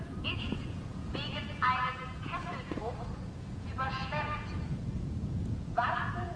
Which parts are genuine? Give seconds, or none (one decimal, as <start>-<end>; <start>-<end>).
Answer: none